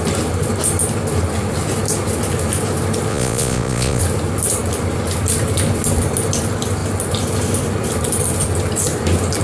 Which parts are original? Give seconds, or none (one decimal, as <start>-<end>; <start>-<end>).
0.0-3.1; 4.0-9.4